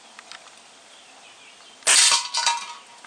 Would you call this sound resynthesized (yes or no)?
no